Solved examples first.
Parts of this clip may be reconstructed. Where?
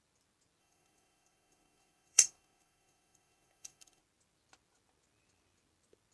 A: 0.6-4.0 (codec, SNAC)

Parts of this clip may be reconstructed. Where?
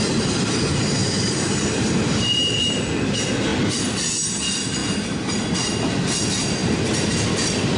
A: 1.0-2.5 (vocoder, BigVGAN v2); 6.6-7.1